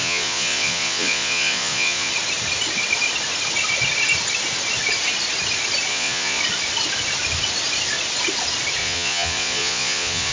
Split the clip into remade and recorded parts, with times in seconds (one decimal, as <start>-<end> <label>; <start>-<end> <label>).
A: 0.0-2.1 remade; 2.1-5.9 recorded; 5.9-6.4 remade; 6.4-8.8 recorded; 8.8-10.3 remade